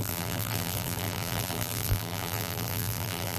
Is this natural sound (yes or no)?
no